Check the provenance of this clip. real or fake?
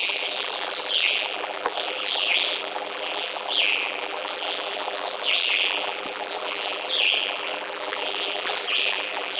fake